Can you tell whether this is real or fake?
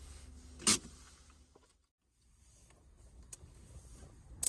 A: real